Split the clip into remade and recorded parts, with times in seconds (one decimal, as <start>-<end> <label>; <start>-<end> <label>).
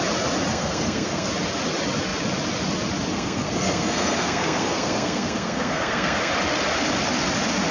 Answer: 0.0-0.5 recorded; 0.5-1.3 remade; 1.3-3.1 recorded; 3.1-6.3 remade; 6.3-7.7 recorded